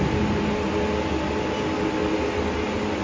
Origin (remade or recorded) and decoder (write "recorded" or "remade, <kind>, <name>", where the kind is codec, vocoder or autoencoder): recorded